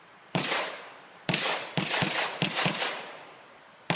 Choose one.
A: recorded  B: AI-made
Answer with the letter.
A